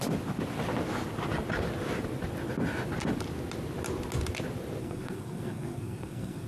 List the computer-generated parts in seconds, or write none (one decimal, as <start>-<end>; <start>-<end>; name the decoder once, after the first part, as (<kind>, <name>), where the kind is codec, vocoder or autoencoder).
4.8-6.5 (codec, SNAC)